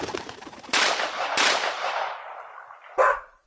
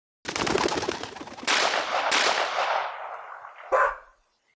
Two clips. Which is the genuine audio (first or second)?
second